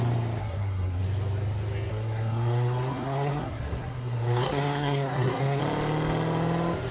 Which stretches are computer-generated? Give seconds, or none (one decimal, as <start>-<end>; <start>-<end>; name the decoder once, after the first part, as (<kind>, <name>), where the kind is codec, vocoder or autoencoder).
0.4-1.0 (codec, SNAC); 1.9-5.6